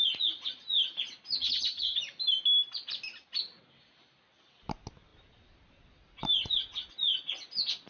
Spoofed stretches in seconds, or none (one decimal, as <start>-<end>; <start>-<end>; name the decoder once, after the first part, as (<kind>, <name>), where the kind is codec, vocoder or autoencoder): 1.4-2.0 (vocoder, HiFi-GAN)